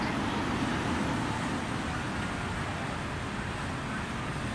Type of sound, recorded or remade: recorded